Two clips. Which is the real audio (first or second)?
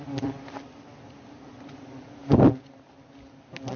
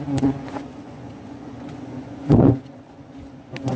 first